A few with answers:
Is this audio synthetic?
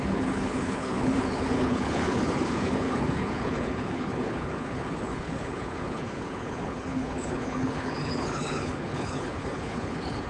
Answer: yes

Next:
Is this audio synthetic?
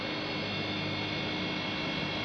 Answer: no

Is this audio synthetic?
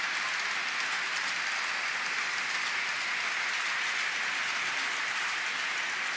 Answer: no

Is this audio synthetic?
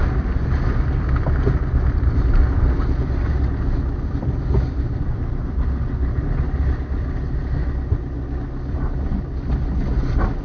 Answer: no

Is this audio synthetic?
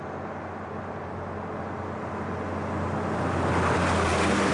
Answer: no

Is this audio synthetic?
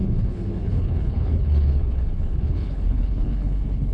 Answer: yes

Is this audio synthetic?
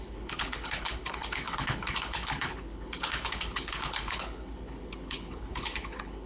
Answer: yes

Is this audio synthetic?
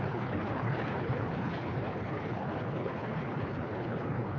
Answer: yes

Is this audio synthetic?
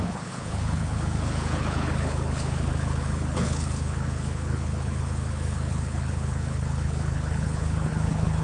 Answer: yes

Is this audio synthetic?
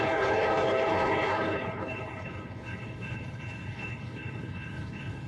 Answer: yes